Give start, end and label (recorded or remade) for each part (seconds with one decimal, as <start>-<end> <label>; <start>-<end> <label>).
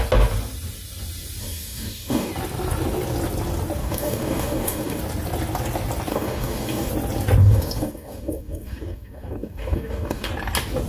0.0-1.4 recorded; 1.4-2.3 remade; 2.3-3.8 recorded; 3.8-5.0 remade; 5.0-6.1 recorded; 6.1-6.9 remade; 6.9-7.4 recorded; 7.4-10.3 remade; 10.3-10.9 recorded